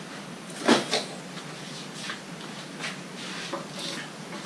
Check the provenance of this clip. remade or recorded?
recorded